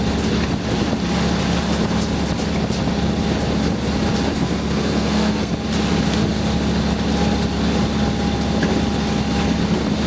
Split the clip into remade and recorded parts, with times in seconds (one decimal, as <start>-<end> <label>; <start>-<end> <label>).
0.0-4.3 recorded; 4.3-5.5 remade; 5.5-10.1 recorded